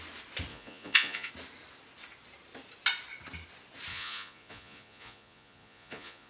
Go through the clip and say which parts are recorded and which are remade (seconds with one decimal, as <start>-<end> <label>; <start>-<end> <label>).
0.0-0.5 recorded; 0.5-1.3 remade; 1.3-3.9 recorded; 3.9-6.3 remade